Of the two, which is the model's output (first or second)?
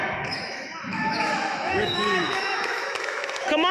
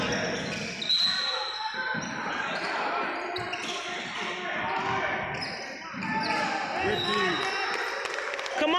first